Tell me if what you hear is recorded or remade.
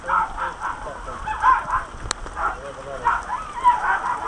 recorded